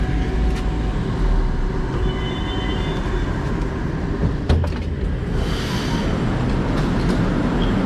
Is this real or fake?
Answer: real